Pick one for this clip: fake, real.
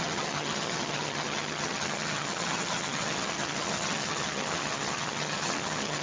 fake